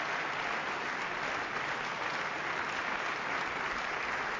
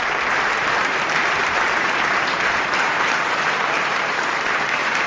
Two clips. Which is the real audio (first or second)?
first